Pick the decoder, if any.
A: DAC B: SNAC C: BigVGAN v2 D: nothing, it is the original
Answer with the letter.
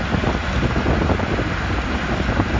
D